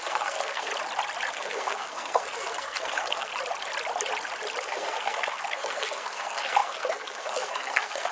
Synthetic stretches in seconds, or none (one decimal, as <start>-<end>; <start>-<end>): 0.0-0.7; 1.3-3.3; 4.6-8.1

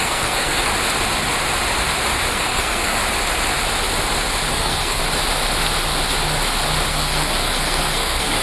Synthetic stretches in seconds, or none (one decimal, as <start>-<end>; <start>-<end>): 0.0-0.7; 2.3-3.0; 4.5-5.0; 6.9-8.4